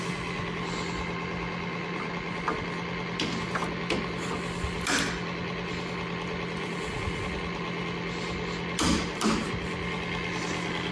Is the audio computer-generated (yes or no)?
no